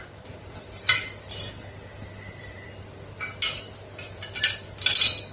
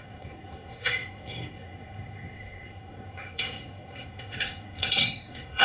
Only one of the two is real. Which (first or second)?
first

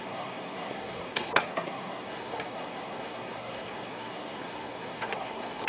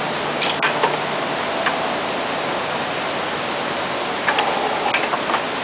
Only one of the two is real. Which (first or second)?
second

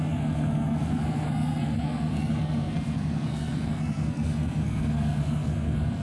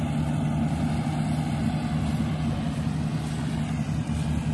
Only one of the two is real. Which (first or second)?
second